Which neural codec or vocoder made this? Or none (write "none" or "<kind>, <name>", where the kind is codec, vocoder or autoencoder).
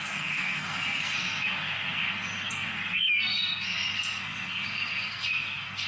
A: codec, SNAC